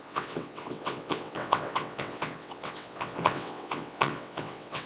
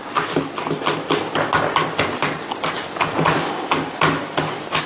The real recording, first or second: second